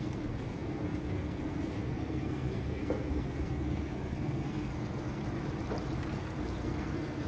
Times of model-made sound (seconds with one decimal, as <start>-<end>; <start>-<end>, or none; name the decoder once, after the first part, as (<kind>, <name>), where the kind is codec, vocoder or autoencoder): 0.0-5.2 (codec, SNAC); 6.0-7.3